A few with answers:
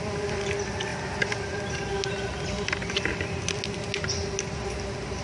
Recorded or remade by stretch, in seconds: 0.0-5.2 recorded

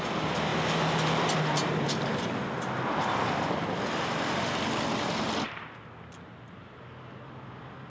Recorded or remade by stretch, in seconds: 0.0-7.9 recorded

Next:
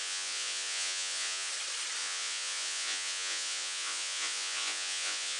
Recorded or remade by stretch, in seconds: 0.0-1.5 remade; 1.5-2.0 recorded; 2.0-5.4 remade

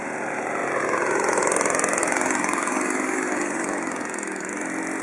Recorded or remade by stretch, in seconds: 0.0-2.0 recorded; 2.0-4.5 remade; 4.5-5.0 recorded

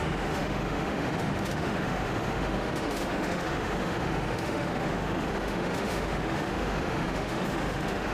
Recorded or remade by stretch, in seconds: 0.0-8.1 remade

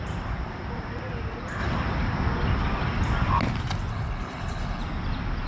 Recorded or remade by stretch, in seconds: 0.0-3.9 recorded; 3.9-4.8 remade; 4.8-5.5 recorded

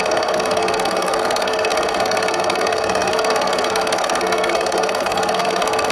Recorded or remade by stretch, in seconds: 0.0-5.9 remade

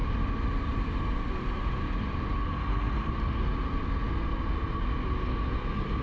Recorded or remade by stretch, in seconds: 0.0-6.0 recorded